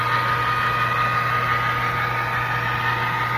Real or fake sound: real